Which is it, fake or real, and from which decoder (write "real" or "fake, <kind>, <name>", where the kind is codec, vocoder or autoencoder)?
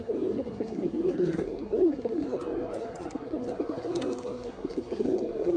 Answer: fake, codec, SNAC